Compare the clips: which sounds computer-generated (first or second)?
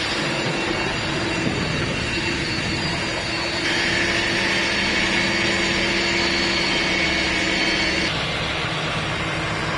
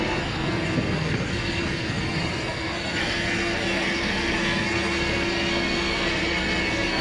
second